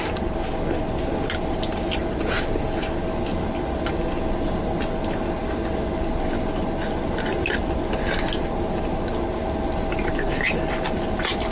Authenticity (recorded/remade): recorded